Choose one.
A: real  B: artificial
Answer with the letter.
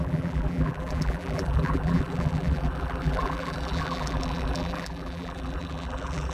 B